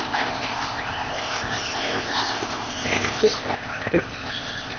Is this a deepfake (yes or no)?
yes